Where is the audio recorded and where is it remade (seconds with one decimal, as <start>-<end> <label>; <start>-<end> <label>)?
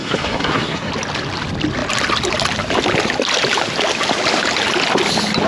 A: 0.0-0.9 remade; 0.9-5.5 recorded